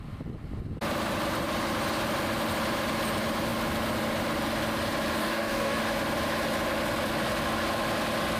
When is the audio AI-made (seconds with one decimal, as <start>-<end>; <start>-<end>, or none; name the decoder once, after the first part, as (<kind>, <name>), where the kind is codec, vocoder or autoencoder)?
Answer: 5.2-5.8 (codec, DAC)